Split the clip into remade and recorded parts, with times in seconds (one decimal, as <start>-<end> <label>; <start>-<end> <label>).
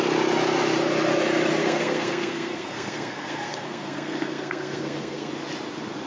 0.0-1.6 recorded; 1.6-5.3 remade; 5.3-6.1 recorded